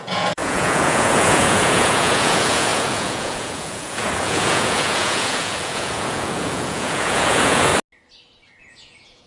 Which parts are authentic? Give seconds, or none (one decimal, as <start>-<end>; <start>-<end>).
7.7-8.6